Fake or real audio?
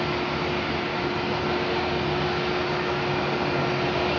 real